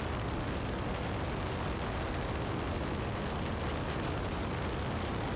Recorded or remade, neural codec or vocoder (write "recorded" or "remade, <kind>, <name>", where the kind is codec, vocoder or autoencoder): recorded